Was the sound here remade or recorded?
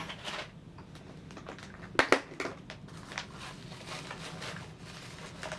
recorded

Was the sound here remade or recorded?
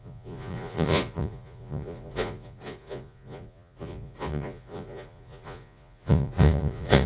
remade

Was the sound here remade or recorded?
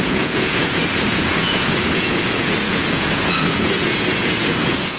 remade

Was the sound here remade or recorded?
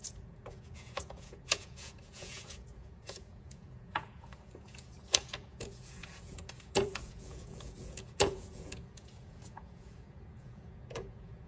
remade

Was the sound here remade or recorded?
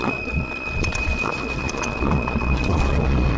remade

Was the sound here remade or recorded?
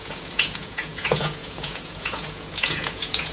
remade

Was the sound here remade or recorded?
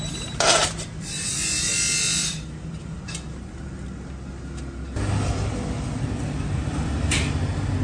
recorded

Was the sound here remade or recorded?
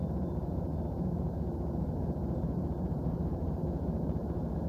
remade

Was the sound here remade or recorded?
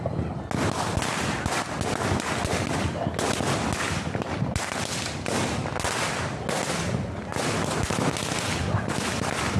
recorded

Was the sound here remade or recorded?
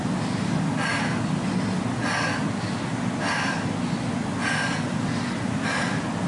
recorded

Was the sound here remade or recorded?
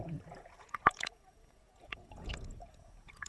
remade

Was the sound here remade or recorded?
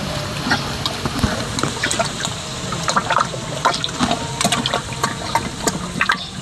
recorded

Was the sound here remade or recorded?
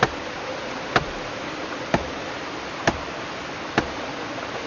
recorded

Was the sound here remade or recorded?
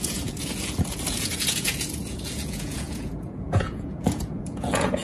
remade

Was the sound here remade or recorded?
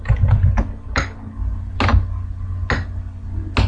recorded